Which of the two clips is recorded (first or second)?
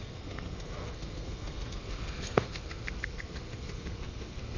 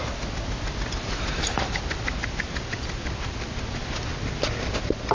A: second